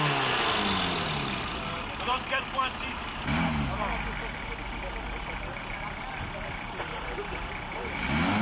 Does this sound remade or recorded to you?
recorded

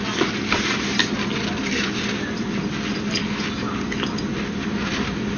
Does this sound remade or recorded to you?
recorded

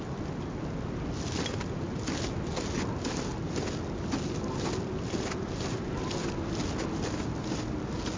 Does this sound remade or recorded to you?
recorded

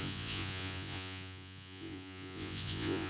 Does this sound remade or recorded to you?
remade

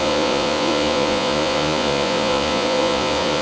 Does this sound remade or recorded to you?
remade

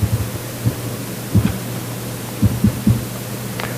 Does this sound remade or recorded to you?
recorded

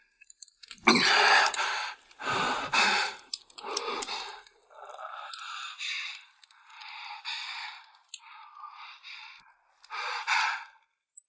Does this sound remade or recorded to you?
recorded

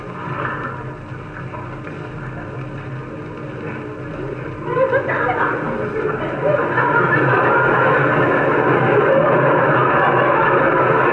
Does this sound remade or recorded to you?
recorded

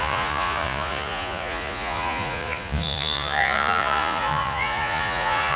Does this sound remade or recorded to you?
remade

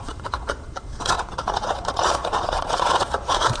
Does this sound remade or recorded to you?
remade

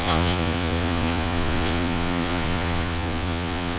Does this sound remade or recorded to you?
remade